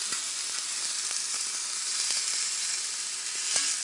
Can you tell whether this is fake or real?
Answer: real